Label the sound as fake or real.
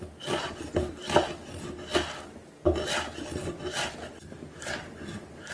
real